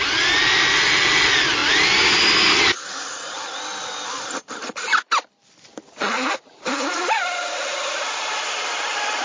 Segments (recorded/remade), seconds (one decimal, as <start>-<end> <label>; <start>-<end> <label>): 0.0-9.2 recorded